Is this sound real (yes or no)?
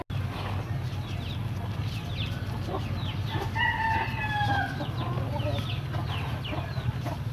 yes